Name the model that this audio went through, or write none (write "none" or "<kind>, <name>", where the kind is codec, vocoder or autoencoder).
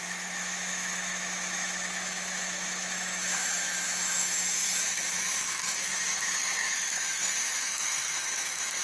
autoencoder, DAC-VAE